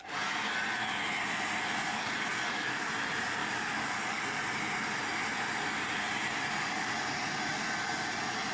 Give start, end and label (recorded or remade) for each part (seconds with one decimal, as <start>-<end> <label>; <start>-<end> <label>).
0.0-2.3 recorded; 2.3-2.9 remade; 2.9-3.4 recorded; 3.4-4.2 remade; 4.2-6.3 recorded; 6.3-6.9 remade; 6.9-8.5 recorded